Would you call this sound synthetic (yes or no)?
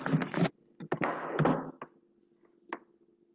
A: no